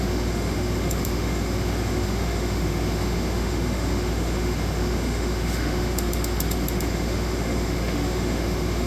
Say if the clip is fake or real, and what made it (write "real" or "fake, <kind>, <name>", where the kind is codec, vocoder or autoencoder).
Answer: fake, autoencoder, DAC-VAE